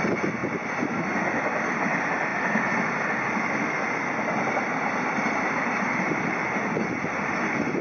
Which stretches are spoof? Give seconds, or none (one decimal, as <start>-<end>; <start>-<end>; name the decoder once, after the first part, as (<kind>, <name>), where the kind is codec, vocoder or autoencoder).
none